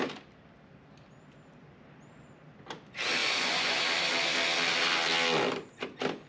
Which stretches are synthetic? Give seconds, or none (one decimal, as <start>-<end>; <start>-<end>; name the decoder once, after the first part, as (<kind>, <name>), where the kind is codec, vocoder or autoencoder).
3.2-3.8 (vocoder, Vocos)